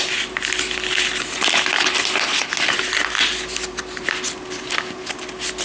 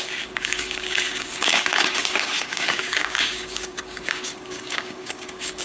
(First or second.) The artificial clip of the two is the second